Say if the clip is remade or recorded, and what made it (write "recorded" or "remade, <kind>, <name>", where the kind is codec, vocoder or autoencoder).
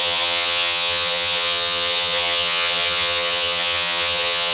remade, vocoder, HiFi-GAN